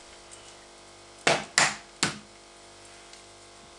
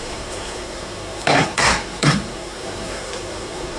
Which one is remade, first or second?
second